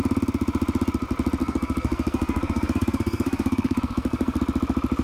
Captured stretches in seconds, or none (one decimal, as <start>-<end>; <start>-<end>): 0.0-1.4; 4.4-5.0